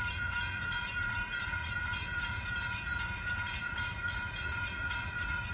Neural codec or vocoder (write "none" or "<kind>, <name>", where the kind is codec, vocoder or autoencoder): vocoder, Vocos